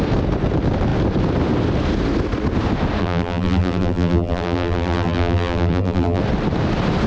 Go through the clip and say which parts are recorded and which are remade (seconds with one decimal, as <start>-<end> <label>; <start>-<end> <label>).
0.0-3.0 recorded; 3.0-6.2 remade; 6.2-7.1 recorded